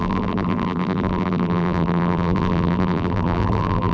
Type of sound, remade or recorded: remade